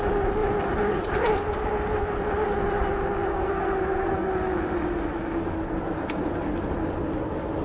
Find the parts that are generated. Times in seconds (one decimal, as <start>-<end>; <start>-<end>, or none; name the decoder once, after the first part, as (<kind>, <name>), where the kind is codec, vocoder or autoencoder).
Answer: 3.3-4.3 (codec, SNAC)